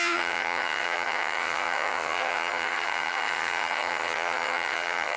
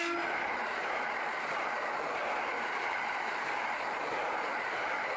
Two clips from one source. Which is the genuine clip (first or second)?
second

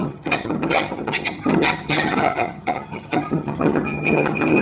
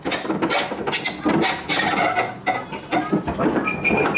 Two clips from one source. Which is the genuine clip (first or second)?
second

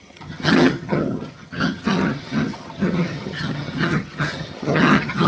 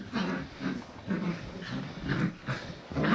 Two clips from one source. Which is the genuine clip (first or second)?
second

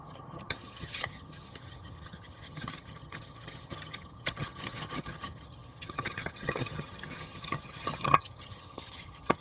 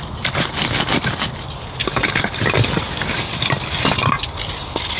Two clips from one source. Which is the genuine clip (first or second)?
second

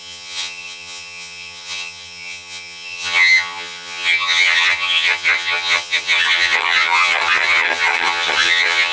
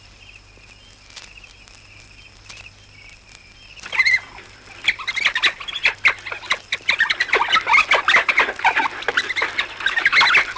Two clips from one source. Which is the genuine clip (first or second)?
second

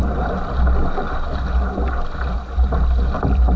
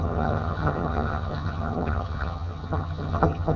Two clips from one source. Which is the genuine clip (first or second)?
first